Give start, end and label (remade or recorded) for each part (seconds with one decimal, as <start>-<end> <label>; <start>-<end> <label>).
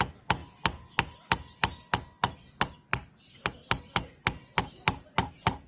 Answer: 0.0-5.7 recorded